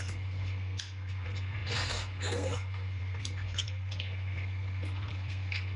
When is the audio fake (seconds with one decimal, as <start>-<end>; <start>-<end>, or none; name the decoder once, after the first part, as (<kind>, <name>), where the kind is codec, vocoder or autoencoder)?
0.0-5.8 (codec, SNAC)